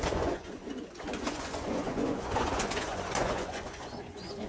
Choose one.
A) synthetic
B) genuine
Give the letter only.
A